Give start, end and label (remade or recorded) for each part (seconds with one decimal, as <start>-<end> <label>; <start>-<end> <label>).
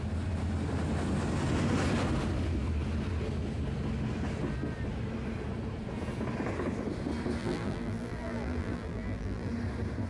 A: 0.0-7.4 recorded; 7.4-9.5 remade; 9.5-10.1 recorded